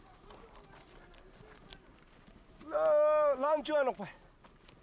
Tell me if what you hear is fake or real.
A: real